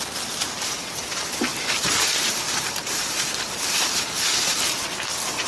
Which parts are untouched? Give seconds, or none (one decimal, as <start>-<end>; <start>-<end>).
0.0-1.5; 4.8-5.5